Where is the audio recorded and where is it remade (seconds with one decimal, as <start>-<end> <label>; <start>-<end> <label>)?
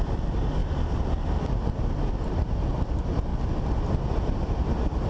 0.0-5.1 recorded